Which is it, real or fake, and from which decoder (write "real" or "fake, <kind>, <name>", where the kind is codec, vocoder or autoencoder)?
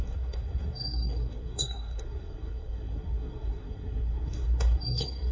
fake, codec, SNAC